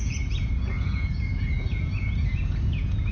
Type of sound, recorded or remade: remade